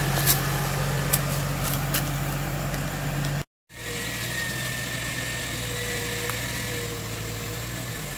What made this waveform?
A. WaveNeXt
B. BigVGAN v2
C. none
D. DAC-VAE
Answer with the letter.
C